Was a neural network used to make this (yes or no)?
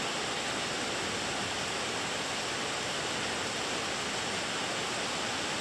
no